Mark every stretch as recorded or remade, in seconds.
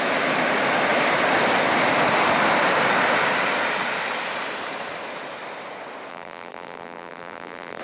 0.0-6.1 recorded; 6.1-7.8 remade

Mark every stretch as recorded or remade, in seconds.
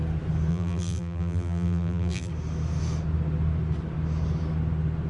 0.0-0.5 recorded; 0.5-2.3 remade; 2.3-5.1 recorded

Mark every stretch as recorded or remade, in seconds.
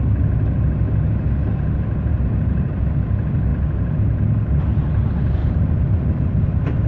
0.0-2.1 recorded; 2.1-2.8 remade; 2.8-3.5 recorded; 3.5-4.2 remade; 4.2-5.4 recorded; 5.4-6.2 remade; 6.2-6.9 recorded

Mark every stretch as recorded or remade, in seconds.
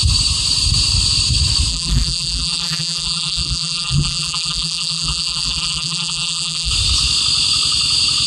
0.0-1.7 recorded; 1.7-6.7 remade; 6.7-8.3 recorded